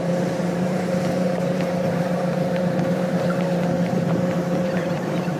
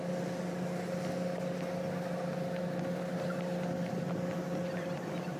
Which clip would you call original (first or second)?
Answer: second